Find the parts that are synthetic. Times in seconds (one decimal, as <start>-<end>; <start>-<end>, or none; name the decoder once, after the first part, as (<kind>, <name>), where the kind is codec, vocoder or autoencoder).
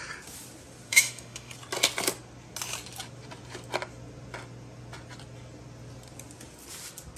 0.9-1.5 (autoencoder, DAC-VAE)